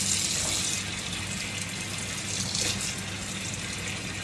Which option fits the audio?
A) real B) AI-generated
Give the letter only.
A